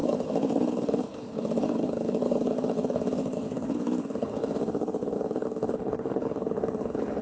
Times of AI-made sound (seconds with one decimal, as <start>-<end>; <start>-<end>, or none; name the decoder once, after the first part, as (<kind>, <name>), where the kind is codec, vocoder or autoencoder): 0.0-7.2 (codec, HILCodec)